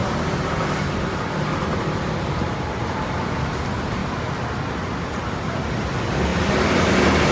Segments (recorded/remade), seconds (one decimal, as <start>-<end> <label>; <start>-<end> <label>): 0.0-4.0 remade; 4.0-5.1 recorded; 5.1-7.3 remade